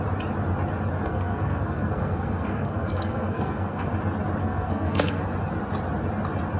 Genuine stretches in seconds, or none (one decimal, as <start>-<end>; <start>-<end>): 0.0-1.0; 3.9-4.4; 5.2-6.6